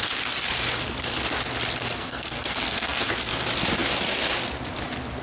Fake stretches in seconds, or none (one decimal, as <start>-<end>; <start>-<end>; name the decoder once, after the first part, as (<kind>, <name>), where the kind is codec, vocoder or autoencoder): 1.8-3.0 (codec, SNAC)